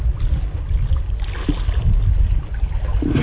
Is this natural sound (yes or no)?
yes